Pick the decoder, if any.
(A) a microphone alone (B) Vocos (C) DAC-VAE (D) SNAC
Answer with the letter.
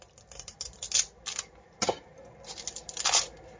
A